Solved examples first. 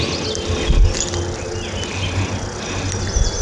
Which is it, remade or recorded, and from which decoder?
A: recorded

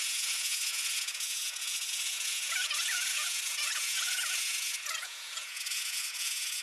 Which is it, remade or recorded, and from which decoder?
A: remade, vocoder, Vocos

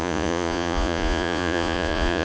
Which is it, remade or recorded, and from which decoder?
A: remade, vocoder, Vocos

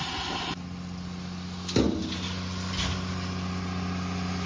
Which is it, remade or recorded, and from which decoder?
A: recorded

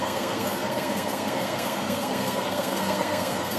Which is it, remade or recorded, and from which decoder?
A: remade, codec, SNAC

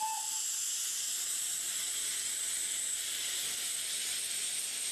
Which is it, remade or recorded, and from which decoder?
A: recorded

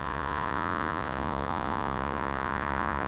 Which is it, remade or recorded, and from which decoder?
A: remade, vocoder, Vocos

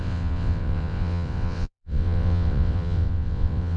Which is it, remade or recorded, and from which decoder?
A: remade, vocoder, WaveNeXt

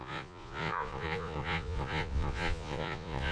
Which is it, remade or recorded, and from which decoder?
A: remade, vocoder, Vocos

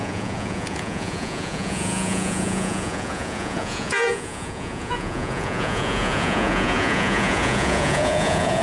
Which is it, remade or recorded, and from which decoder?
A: remade, vocoder, Vocos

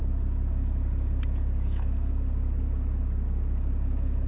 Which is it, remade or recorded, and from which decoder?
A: recorded